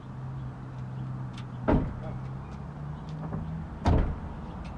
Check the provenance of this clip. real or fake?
real